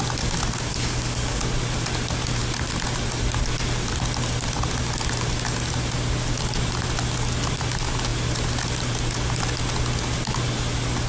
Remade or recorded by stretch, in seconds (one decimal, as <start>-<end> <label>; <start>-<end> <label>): 0.0-0.7 recorded; 0.7-1.4 remade; 1.4-11.1 recorded

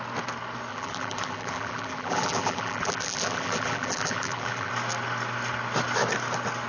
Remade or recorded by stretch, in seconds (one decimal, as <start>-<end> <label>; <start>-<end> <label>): 0.0-0.7 recorded; 0.7-4.7 remade; 4.7-6.7 recorded

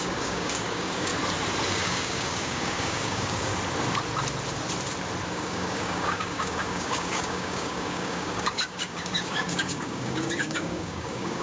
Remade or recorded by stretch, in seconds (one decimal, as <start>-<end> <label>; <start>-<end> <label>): 0.0-1.1 remade; 1.1-1.7 recorded; 1.7-3.5 remade; 3.5-5.3 recorded; 5.3-11.4 remade

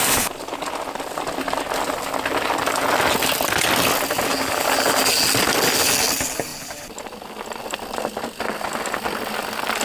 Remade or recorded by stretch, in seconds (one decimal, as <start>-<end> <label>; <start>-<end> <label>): 0.0-9.8 recorded

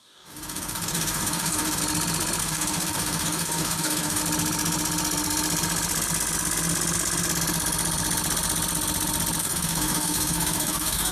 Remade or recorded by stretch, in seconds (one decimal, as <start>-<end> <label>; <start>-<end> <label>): 0.0-1.8 remade; 1.8-2.4 recorded; 2.4-4.2 remade; 4.2-9.4 recorded; 9.4-11.1 remade

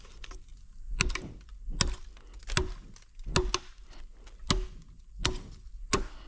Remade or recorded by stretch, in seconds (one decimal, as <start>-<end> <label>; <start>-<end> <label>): 0.0-6.3 recorded

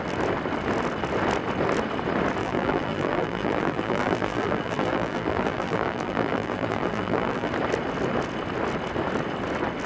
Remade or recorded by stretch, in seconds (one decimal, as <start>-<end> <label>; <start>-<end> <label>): 0.0-2.4 recorded; 2.4-7.5 remade; 7.5-9.9 recorded

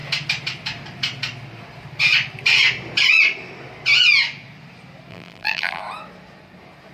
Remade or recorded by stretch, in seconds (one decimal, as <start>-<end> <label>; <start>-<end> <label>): 0.0-5.1 recorded; 5.1-5.8 remade; 5.8-6.9 recorded